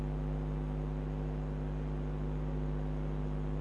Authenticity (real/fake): real